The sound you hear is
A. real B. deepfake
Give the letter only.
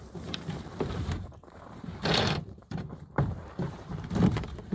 B